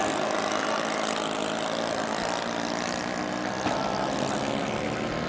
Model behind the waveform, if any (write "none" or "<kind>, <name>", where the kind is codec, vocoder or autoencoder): vocoder, BigVGAN v2